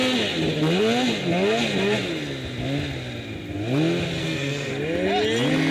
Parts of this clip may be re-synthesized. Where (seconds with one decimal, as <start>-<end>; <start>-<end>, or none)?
4.2-4.7